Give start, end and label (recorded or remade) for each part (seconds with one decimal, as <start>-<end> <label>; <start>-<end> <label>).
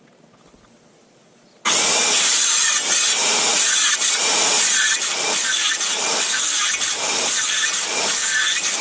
0.0-3.2 recorded; 3.2-4.5 remade; 4.5-8.8 recorded